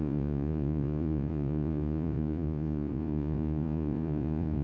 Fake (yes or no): yes